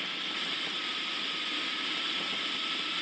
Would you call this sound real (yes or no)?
yes